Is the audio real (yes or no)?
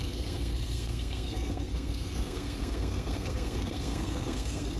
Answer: no